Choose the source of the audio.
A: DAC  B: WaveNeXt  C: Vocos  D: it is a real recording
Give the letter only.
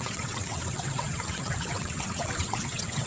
B